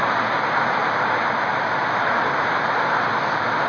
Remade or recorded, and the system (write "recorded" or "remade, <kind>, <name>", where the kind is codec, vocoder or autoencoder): recorded